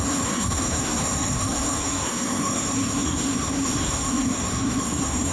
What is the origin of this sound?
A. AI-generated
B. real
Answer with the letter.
A